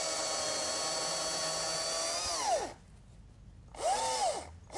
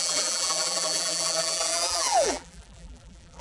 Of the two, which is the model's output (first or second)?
second